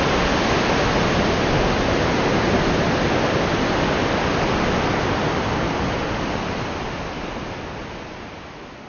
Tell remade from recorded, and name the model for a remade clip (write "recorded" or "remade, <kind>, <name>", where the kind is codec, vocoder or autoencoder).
recorded